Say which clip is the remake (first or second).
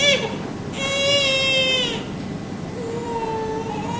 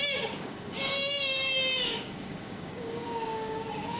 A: second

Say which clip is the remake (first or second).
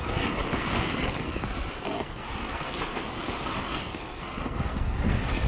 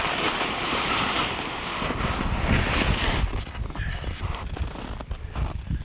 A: first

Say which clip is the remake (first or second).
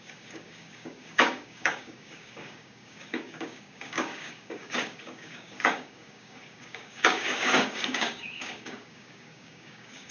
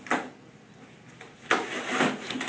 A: first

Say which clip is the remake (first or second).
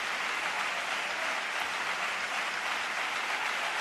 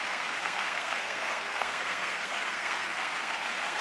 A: second